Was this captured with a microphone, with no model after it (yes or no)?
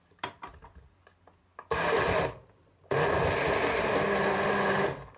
yes